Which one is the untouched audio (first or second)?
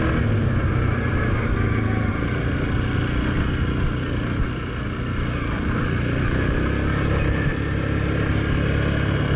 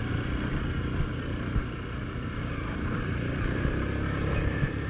first